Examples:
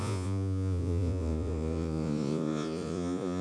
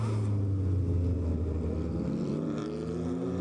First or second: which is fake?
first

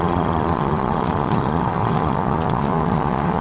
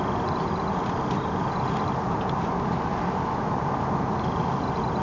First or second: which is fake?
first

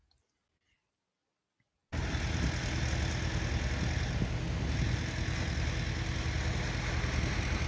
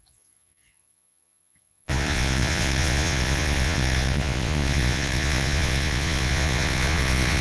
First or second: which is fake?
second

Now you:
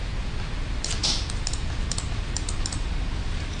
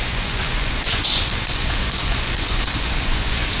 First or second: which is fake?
second